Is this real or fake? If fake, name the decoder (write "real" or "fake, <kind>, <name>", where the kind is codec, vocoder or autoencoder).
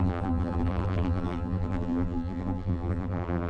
fake, vocoder, BigVGAN v2